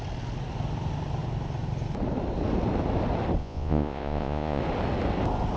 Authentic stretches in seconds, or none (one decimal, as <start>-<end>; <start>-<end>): 0.0-3.4; 4.6-5.6